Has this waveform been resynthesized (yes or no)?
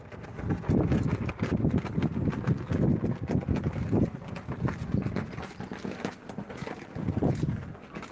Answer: no